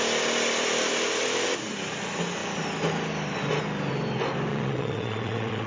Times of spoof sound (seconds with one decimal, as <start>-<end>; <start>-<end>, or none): 4.5-5.7